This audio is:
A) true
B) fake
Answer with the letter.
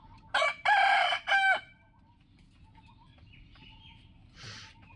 A